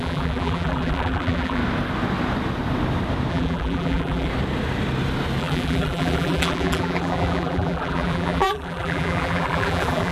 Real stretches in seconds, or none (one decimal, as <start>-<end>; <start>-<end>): 1.6-3.3; 4.3-5.4